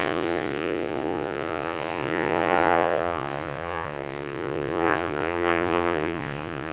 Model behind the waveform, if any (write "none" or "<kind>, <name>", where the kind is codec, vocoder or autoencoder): vocoder, Vocos